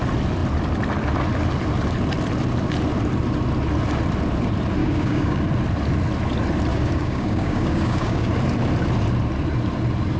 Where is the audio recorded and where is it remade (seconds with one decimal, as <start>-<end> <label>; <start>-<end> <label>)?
0.0-4.8 recorded; 4.8-5.4 remade; 5.4-6.7 recorded; 6.7-8.3 remade; 8.3-10.2 recorded